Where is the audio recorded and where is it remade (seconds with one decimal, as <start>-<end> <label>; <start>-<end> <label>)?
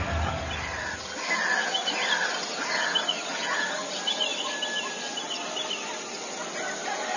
0.0-7.2 recorded